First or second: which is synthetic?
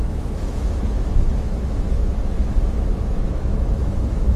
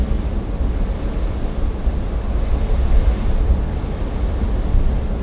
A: first